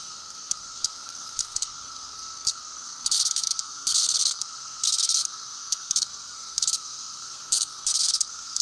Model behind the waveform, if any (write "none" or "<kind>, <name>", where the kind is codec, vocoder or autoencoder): codec, SNAC